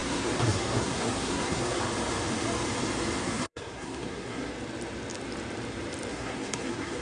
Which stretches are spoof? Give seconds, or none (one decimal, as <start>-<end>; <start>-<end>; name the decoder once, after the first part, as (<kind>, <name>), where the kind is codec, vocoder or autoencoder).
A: 0.0-1.8 (codec, SNAC); 3.2-4.5; 6.1-7.0